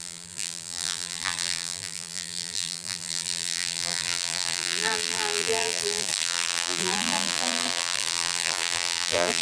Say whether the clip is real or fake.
fake